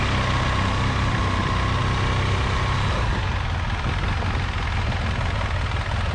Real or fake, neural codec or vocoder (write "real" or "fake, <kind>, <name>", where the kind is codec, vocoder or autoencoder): real